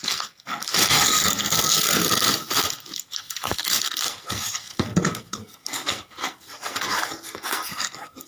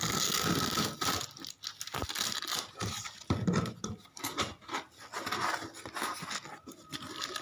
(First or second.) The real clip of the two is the second